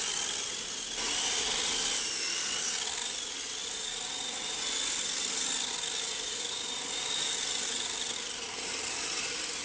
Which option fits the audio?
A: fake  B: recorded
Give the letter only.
B